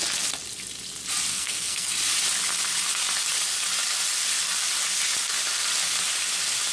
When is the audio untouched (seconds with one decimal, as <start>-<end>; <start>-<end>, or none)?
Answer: 0.0-1.3; 1.9-6.7